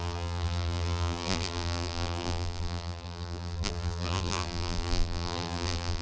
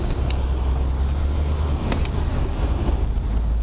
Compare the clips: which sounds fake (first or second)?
first